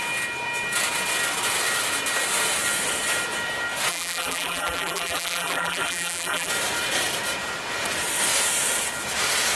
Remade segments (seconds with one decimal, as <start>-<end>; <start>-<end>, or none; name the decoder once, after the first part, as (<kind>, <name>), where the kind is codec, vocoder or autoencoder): 3.9-6.5 (vocoder, BigVGAN v2)